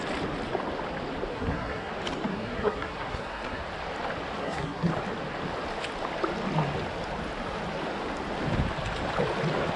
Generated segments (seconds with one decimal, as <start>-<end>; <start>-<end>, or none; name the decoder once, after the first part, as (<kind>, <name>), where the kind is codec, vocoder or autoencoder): 1.3-1.9 (codec, SNAC); 2.3-3.6; 4.4-4.9